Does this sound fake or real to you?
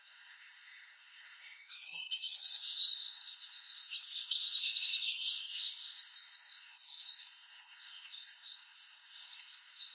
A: fake